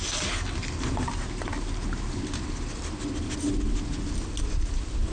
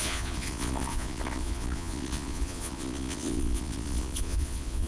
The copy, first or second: second